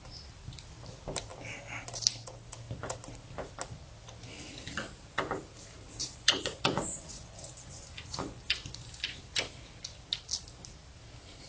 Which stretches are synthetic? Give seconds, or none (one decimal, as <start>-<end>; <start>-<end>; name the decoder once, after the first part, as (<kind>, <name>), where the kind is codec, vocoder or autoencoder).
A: 6.0-9.2 (vocoder, Vocos)